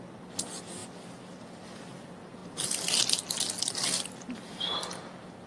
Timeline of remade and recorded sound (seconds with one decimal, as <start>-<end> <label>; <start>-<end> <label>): 0.0-5.5 recorded